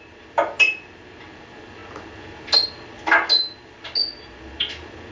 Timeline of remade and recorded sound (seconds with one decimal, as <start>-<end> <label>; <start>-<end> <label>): 0.0-5.1 recorded